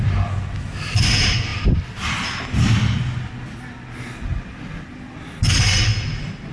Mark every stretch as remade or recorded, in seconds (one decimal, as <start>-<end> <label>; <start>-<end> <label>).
0.0-6.5 recorded